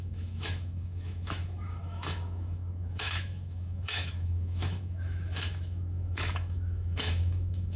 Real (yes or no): no